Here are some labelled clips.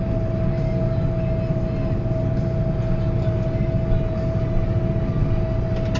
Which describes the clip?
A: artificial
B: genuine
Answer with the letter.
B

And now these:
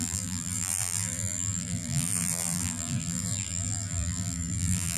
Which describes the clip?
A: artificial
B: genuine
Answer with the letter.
A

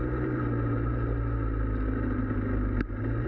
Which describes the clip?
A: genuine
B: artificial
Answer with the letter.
A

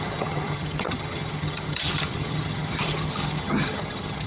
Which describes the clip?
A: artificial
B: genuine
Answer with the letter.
A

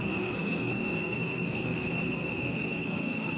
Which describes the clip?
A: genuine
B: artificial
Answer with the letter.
B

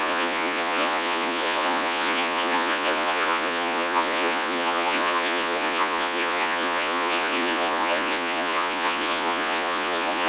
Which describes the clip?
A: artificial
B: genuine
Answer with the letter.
A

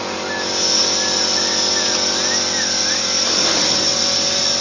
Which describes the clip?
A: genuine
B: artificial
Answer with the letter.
A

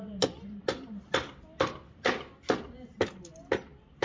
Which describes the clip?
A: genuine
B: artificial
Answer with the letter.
A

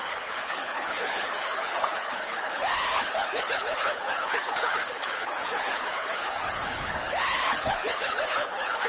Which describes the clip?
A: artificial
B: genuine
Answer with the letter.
A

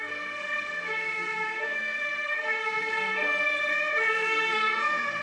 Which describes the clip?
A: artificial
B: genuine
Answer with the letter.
A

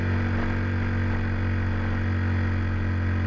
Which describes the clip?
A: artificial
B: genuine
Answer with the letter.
B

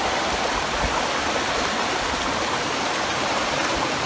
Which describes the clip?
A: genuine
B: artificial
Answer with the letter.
A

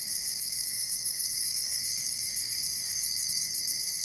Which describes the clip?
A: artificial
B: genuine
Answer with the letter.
A